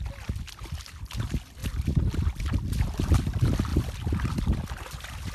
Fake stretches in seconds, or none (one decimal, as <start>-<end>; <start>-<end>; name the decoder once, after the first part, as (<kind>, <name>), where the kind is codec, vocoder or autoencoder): 1.6-2.4 (vocoder, BigVGAN v2); 3.7-4.5